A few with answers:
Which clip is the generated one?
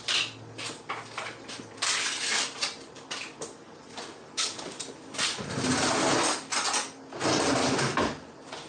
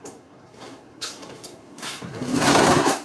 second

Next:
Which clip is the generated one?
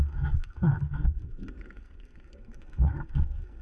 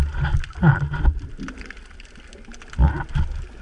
first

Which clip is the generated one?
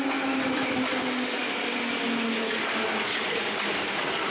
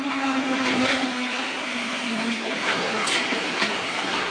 second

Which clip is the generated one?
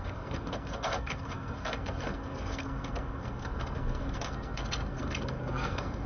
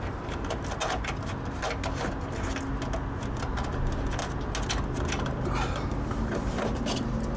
first